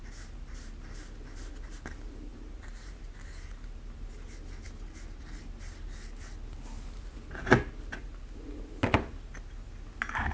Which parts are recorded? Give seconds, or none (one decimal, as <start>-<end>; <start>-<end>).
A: 0.0-2.3; 3.0-10.3